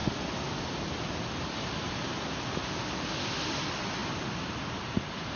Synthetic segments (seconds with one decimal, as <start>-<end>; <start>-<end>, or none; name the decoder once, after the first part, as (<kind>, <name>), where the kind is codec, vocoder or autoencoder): none